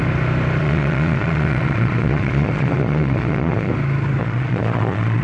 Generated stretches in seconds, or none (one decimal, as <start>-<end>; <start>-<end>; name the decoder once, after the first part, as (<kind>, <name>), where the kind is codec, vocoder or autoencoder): 0.6-3.7 (vocoder, Vocos); 4.2-5.2